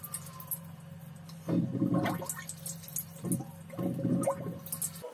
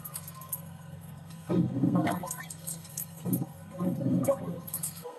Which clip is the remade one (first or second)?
second